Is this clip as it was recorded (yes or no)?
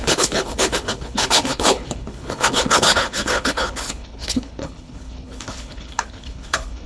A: no